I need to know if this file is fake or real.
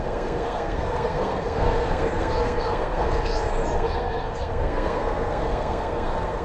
fake